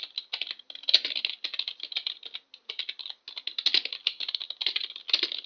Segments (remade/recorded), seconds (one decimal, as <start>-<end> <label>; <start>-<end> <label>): 0.0-5.5 recorded